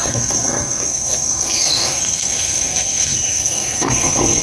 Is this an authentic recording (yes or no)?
no